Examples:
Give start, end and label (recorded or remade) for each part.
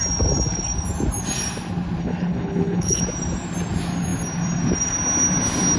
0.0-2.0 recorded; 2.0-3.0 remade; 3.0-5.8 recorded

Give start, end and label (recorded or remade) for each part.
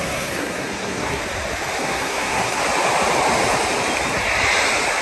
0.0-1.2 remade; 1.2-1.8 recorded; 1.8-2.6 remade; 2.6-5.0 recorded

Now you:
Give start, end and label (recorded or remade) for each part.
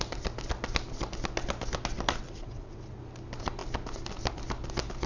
0.0-2.2 recorded; 2.2-3.0 remade; 3.0-5.1 recorded